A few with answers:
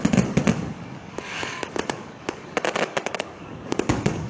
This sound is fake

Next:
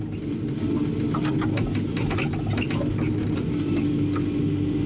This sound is real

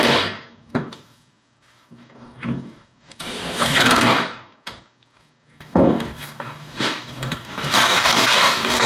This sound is fake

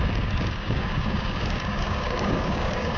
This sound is fake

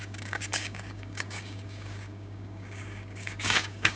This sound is fake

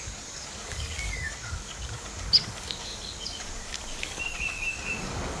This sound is fake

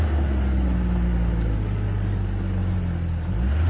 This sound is real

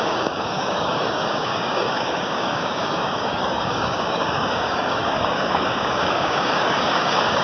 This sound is fake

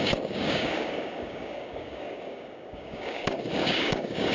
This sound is fake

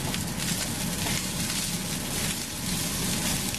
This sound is real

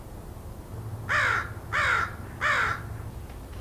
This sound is real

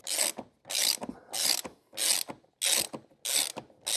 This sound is real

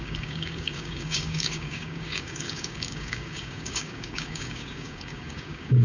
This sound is fake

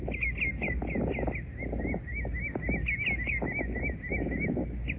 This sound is real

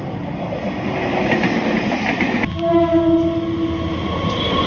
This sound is real